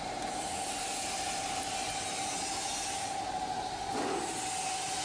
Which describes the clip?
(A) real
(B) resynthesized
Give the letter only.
A